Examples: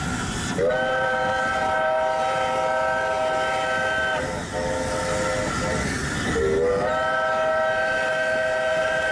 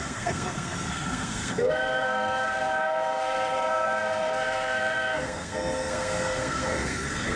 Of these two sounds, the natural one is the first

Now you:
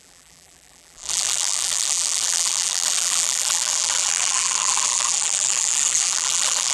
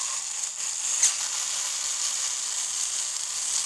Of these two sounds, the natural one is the second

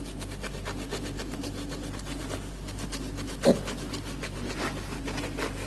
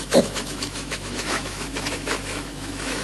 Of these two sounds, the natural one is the first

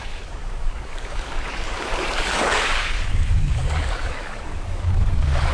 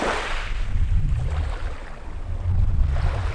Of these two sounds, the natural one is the second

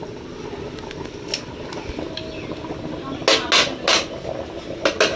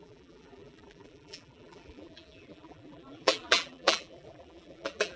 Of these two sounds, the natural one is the first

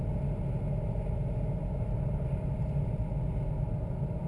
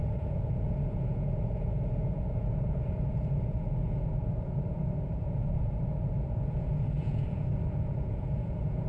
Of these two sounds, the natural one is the first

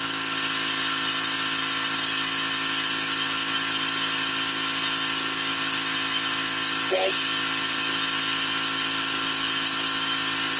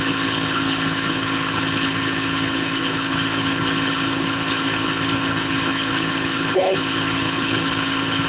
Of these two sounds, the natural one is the first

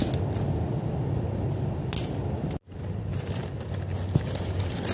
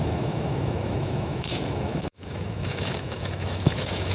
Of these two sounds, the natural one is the first